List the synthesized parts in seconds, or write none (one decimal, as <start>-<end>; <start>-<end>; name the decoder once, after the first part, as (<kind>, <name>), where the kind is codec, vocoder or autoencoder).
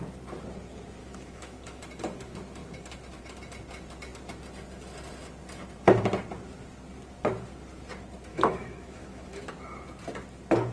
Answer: 1.0-1.8 (autoencoder, DAC-VAE); 8.3-9.5